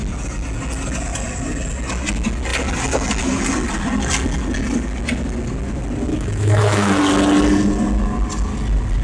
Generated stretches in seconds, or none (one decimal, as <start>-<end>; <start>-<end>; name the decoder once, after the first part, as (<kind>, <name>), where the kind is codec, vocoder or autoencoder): 6.1-7.0 (autoencoder, DAC-VAE)